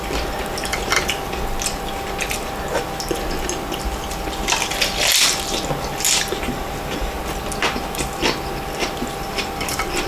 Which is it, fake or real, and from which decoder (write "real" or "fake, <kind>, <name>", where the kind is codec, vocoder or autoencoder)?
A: real